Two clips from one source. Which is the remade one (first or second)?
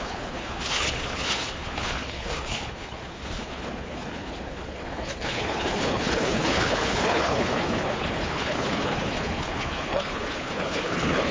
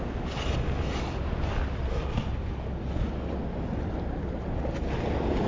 first